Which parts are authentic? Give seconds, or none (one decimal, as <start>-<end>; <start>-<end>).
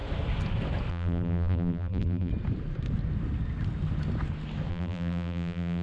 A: 0.0-0.9; 2.3-4.7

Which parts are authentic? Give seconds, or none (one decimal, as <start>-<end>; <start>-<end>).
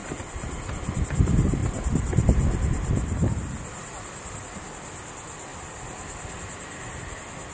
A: 1.0-1.6; 3.4-5.5; 6.2-7.5